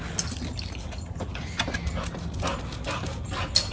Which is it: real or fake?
real